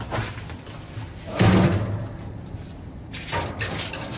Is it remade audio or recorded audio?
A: recorded